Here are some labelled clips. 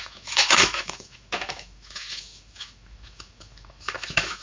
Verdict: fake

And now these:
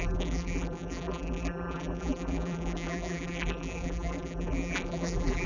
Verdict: fake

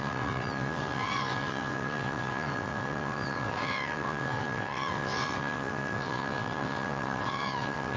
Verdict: fake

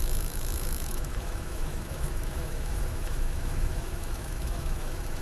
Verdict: fake